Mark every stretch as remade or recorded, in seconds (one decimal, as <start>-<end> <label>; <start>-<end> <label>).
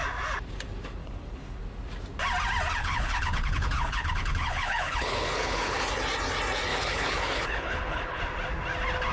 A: 0.0-1.0 recorded; 1.0-1.6 remade; 1.6-2.8 recorded; 2.8-5.8 remade; 5.8-6.7 recorded; 6.7-8.2 remade; 8.2-9.1 recorded